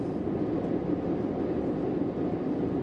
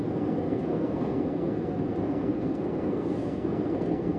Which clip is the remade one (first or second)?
second